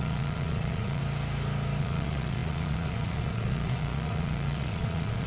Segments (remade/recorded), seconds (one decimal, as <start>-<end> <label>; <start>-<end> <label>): 0.0-1.0 remade; 1.0-1.8 recorded; 1.8-5.3 remade